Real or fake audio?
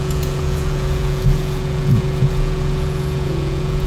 fake